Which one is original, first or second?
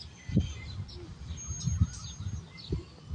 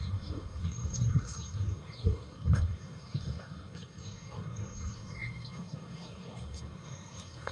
first